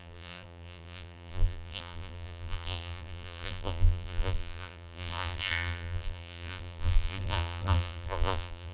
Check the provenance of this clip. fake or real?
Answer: fake